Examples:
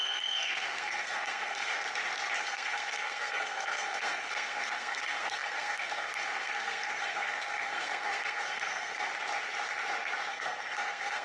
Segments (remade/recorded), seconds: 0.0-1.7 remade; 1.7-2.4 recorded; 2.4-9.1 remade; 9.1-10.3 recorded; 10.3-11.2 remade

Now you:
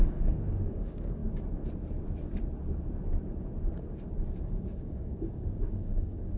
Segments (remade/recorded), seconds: 0.0-1.2 remade; 1.2-4.4 recorded; 4.4-6.4 remade

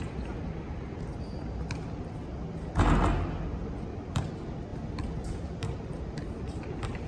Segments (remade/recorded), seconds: 0.0-7.1 recorded

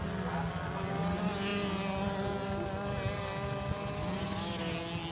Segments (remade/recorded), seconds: 0.0-5.1 recorded

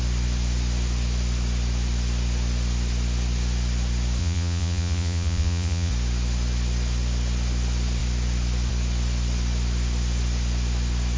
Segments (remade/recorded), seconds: 0.0-4.2 recorded; 4.2-5.9 remade; 5.9-11.2 recorded

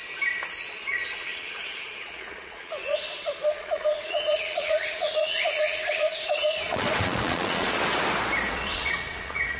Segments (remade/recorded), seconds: 0.0-0.6 recorded; 0.6-7.8 remade; 7.8-8.5 recorded; 8.5-9.6 remade